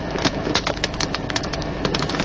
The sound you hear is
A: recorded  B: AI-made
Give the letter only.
B